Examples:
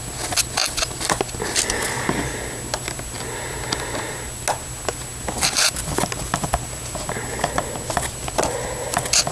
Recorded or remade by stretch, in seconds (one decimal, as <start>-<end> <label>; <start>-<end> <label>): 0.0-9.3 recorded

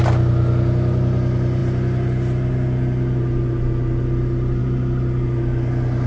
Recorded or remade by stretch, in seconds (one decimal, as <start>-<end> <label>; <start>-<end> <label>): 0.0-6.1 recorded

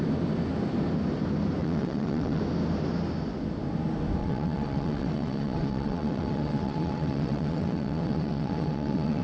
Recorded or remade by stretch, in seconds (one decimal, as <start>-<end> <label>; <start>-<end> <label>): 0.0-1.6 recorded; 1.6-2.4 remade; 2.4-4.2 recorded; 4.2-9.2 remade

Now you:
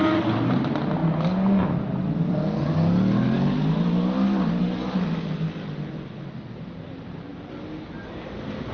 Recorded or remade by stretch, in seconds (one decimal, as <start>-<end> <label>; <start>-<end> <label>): 0.0-8.7 recorded

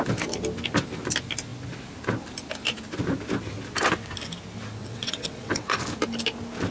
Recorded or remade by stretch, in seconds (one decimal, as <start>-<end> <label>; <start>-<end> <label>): 0.0-4.8 recorded; 4.8-5.8 remade; 5.8-6.7 recorded